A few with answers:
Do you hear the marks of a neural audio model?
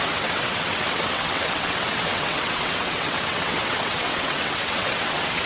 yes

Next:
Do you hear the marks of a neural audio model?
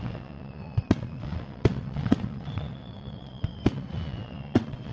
yes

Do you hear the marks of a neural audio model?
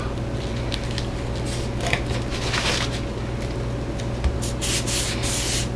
no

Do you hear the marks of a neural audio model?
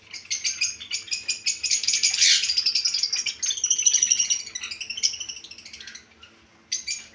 no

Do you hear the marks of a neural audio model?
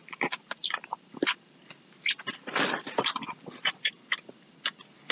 no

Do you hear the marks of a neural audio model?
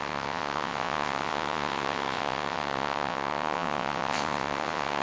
yes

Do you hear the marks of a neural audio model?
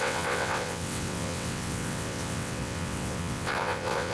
yes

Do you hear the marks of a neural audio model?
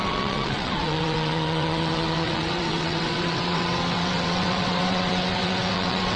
yes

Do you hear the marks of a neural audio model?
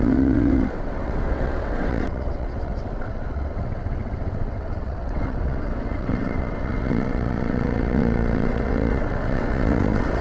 yes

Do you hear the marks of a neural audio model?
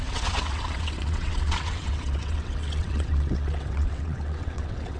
yes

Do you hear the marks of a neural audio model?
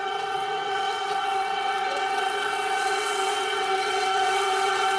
yes